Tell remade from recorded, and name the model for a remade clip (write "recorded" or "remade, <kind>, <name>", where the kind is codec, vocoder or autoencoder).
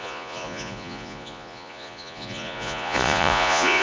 remade, vocoder, Vocos